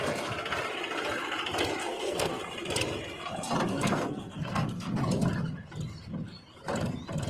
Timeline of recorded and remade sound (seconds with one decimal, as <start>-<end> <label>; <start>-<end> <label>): 0.0-1.8 recorded; 1.8-2.4 remade; 2.4-3.7 recorded; 3.7-5.0 remade; 5.0-7.3 recorded